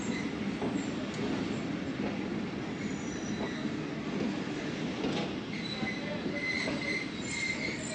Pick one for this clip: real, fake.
real